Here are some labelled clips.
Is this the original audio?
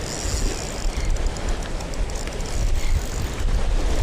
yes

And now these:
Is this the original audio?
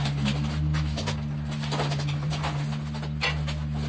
yes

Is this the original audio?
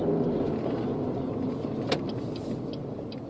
yes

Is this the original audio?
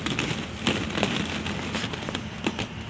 yes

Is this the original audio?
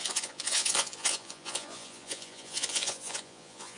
no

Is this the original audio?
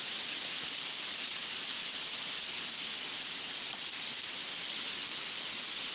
yes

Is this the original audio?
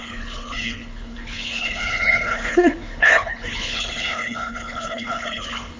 no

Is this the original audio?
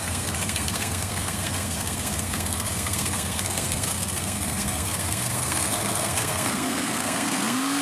no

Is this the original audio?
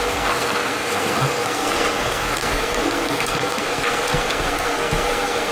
no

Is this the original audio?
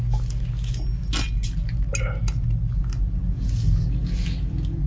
yes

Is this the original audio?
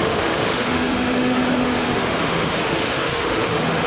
no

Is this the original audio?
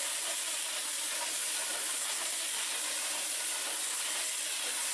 yes